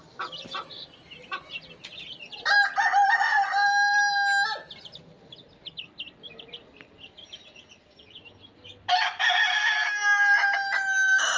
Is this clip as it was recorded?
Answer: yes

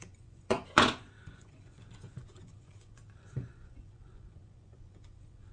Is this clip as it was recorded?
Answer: no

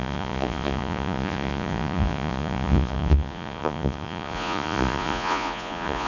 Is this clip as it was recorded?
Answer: no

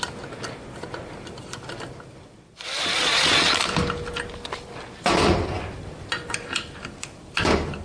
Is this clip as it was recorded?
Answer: yes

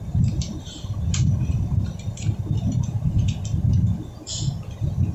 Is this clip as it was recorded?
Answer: yes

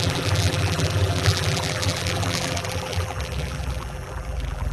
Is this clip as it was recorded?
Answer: no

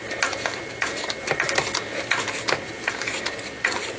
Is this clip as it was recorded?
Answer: yes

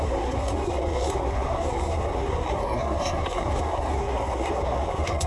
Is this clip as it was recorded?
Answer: no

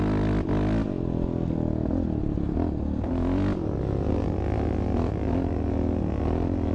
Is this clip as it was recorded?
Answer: yes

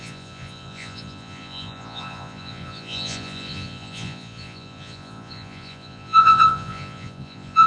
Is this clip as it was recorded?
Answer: no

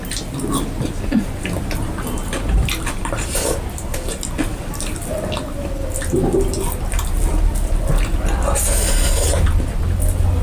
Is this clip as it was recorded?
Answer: yes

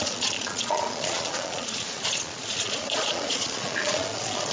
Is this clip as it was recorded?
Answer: no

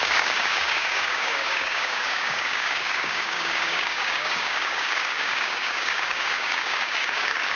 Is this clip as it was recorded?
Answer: no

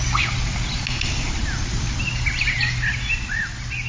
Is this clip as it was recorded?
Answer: yes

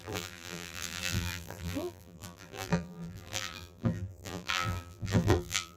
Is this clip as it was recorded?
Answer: no